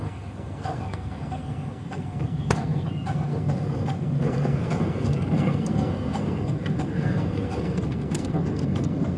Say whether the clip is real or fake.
fake